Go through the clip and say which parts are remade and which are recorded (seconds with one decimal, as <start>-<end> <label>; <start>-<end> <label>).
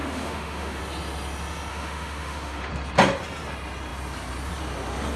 0.0-0.8 remade; 0.8-1.7 recorded; 1.7-2.7 remade; 2.7-5.2 recorded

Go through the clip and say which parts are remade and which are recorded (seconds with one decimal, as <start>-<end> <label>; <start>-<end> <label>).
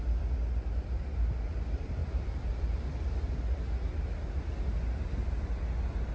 0.0-6.1 recorded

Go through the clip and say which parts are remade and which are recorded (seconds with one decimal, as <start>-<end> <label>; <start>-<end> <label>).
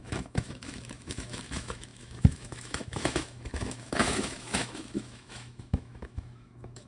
0.0-6.9 remade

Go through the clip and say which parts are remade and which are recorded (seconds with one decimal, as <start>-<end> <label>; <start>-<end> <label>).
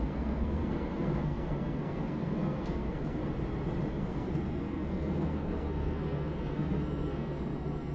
0.0-3.2 remade; 3.2-3.9 recorded; 3.9-7.9 remade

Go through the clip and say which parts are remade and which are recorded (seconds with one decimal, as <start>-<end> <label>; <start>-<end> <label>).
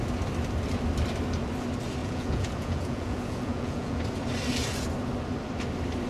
0.0-2.0 recorded; 2.0-4.0 remade; 4.0-6.1 recorded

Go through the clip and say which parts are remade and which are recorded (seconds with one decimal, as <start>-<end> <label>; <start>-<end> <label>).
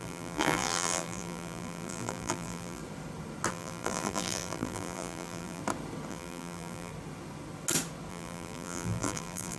0.0-2.8 remade; 2.8-3.5 recorded; 3.5-5.6 remade; 5.6-6.1 recorded; 6.1-6.9 remade; 6.9-8.1 recorded; 8.1-9.6 remade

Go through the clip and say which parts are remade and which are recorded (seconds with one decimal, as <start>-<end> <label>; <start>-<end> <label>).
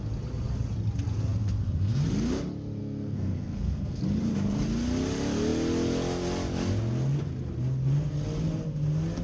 0.0-1.4 recorded; 1.4-2.0 remade; 2.0-2.8 recorded; 2.8-4.0 remade; 4.0-9.2 recorded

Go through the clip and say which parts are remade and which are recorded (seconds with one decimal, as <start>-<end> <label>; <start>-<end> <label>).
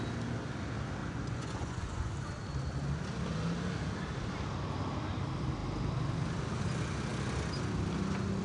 0.0-1.0 recorded; 1.0-2.1 remade; 2.1-8.4 recorded